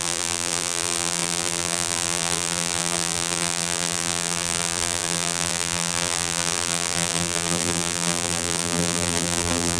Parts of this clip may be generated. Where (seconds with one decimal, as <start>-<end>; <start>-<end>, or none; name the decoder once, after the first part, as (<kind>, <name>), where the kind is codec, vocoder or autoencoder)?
0.0-9.8 (vocoder, BigVGAN v2)